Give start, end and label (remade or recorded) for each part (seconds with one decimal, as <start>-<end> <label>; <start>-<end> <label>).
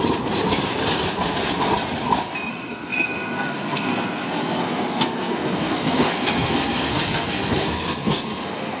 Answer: 0.0-2.5 recorded; 2.5-8.8 remade